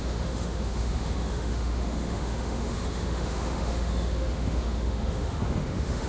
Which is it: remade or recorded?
remade